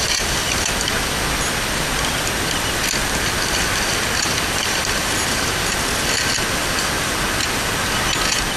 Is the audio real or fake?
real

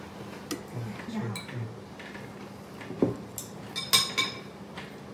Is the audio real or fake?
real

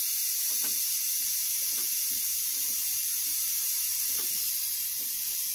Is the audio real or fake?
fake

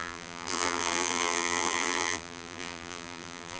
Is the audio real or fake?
fake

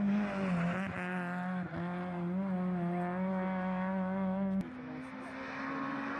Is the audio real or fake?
real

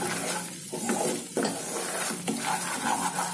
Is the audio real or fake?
real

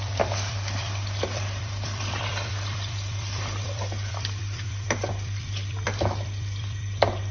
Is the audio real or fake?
fake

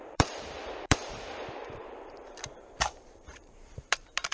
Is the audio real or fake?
fake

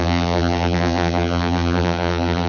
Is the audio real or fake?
fake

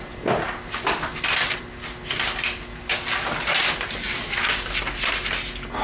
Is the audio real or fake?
real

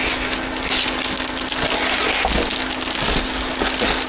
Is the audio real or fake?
real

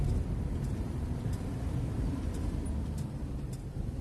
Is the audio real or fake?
fake